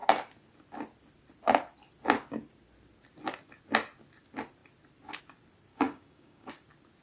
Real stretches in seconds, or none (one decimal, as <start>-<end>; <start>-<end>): 0.0-5.7; 6.5-7.0